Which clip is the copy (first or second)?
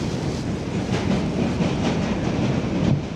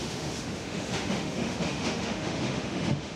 second